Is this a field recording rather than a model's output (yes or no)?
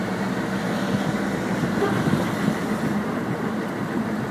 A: no